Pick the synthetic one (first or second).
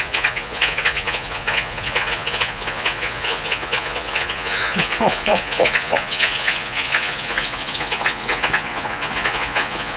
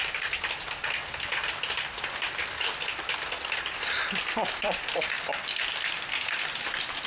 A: first